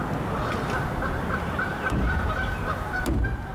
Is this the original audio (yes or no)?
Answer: yes